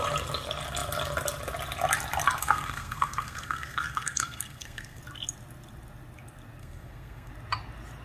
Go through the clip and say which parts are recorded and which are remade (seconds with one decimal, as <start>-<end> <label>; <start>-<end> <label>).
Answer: 0.0-2.4 recorded; 2.4-5.0 remade; 5.0-6.6 recorded; 6.6-7.3 remade; 7.3-8.0 recorded